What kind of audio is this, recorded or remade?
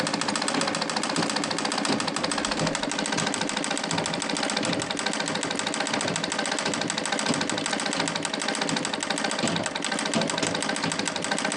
recorded